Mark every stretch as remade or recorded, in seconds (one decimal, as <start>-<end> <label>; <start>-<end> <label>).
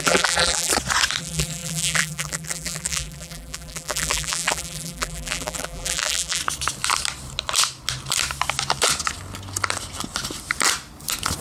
0.0-0.7 remade; 0.7-1.2 recorded; 1.2-6.4 remade; 6.4-11.4 recorded